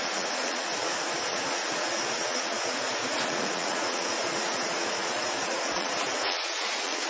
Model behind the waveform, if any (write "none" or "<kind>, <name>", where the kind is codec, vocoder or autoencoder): vocoder, Vocos